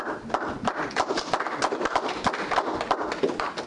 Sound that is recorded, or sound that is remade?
recorded